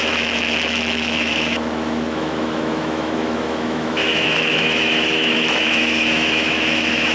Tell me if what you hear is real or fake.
fake